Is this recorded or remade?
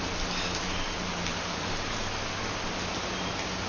recorded